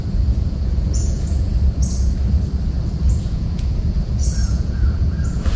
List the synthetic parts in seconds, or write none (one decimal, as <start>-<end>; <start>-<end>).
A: 0.0-1.5; 3.1-5.6